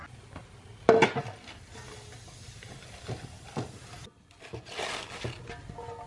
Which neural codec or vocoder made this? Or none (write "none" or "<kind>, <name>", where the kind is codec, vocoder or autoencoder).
none